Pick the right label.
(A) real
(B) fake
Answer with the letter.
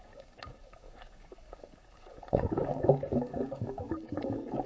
B